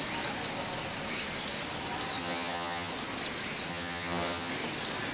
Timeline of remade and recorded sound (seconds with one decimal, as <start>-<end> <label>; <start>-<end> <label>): 0.0-2.2 recorded; 2.2-2.9 remade; 2.9-3.7 recorded; 3.7-4.5 remade; 4.5-5.1 recorded